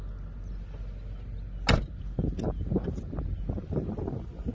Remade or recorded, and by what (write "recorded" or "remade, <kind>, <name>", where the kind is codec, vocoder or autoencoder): recorded